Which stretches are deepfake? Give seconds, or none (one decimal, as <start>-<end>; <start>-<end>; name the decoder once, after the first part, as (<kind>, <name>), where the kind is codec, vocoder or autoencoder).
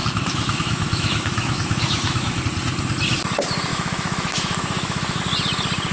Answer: 0.0-2.4 (autoencoder, DAC-VAE); 3.7-5.2